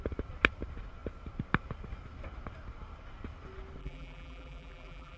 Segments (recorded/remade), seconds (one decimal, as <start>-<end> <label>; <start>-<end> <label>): 0.0-3.8 recorded; 3.8-5.2 remade